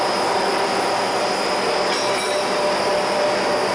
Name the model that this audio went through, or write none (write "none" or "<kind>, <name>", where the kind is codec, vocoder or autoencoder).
none